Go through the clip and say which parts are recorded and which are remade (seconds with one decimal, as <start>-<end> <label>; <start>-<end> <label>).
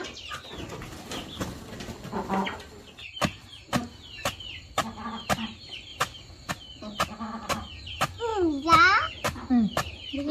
0.0-10.3 recorded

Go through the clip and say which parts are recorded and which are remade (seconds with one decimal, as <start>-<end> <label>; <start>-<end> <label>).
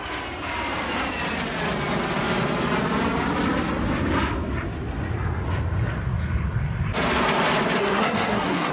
0.0-7.8 recorded; 7.8-8.7 remade